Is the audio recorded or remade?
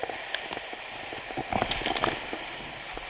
recorded